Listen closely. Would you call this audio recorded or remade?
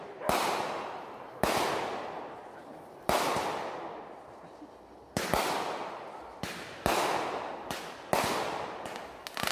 recorded